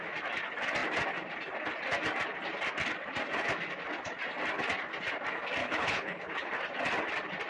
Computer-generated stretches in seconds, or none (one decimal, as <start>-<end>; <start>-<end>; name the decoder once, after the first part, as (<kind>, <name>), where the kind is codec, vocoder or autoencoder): 5.6-6.5 (codec, HILCodec)